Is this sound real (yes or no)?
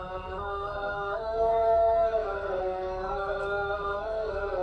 no